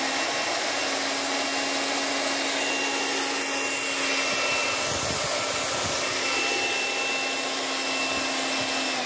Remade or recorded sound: recorded